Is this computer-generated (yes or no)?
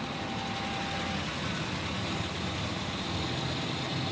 no